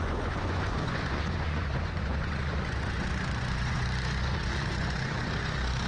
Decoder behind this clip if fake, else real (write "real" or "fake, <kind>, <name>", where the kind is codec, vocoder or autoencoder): fake, vocoder, Vocos